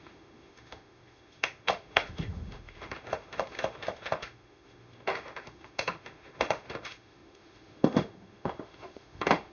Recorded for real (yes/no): no